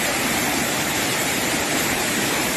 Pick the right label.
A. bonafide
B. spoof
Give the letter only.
B